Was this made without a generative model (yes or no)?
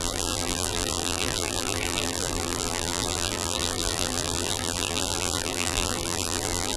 no